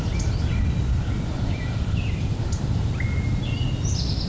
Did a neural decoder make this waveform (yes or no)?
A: no